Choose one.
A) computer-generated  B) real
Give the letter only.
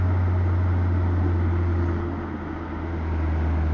B